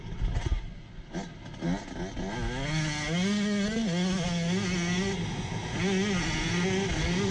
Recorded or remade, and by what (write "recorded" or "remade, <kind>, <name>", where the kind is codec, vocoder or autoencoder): recorded